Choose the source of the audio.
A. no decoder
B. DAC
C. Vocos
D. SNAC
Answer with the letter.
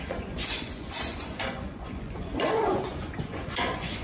C